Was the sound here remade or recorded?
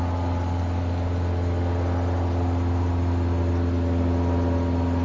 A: recorded